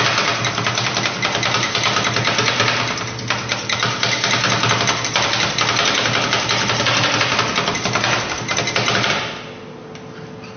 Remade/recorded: recorded